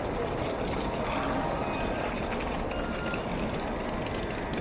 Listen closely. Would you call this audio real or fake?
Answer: real